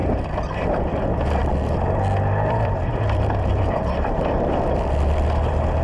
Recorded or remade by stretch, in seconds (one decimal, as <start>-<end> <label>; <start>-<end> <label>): 0.0-1.4 recorded; 1.4-3.8 remade; 3.8-5.8 recorded